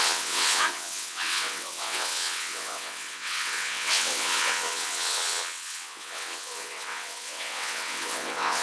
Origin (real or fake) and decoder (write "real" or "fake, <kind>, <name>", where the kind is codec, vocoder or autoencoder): fake, vocoder, WaveNeXt